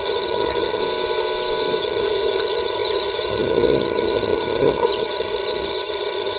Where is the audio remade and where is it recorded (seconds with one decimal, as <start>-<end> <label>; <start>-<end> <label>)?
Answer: 0.0-0.8 remade; 0.8-1.8 recorded; 1.8-6.4 remade